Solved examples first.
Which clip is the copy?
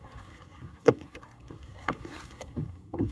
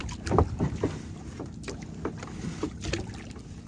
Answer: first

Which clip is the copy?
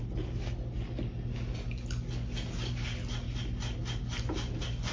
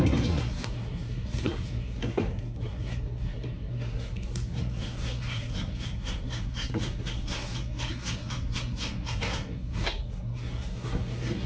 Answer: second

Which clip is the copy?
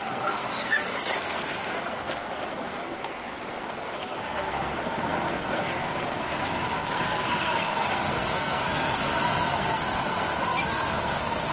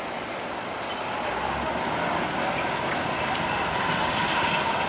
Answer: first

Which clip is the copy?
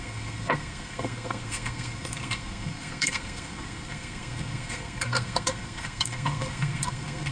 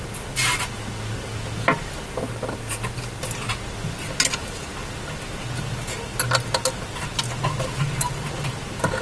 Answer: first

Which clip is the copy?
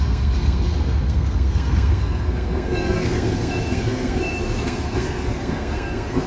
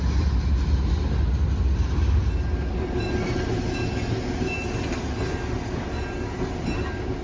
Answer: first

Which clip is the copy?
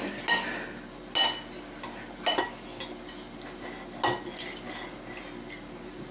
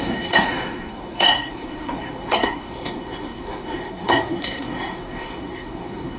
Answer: second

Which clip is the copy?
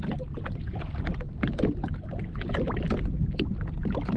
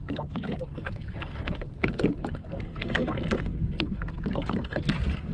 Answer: second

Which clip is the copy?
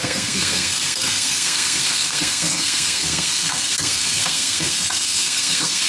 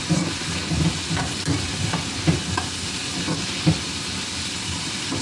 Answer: first